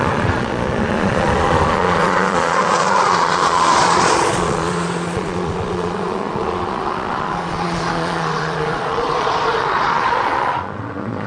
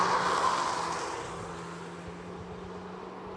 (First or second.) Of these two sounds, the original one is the second